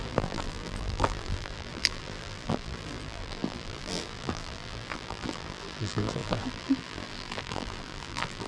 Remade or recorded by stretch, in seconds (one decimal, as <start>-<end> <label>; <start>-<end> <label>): 0.0-8.5 remade